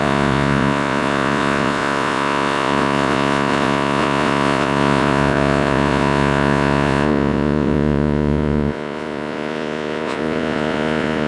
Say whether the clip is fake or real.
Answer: fake